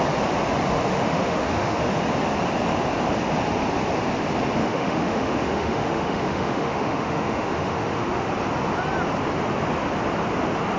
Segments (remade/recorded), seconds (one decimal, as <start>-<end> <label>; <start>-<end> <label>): 0.0-0.9 recorded; 0.9-2.0 remade; 2.0-4.6 recorded; 4.6-8.3 remade; 8.3-10.8 recorded